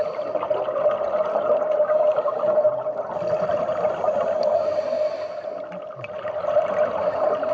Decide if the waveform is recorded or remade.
recorded